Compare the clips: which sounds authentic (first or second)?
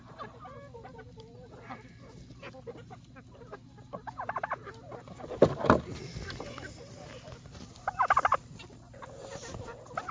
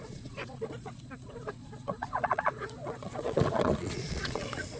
first